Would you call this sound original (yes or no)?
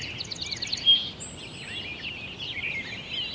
yes